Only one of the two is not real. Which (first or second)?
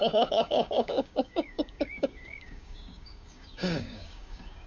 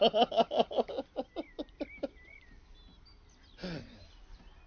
first